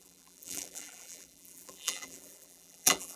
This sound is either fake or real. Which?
fake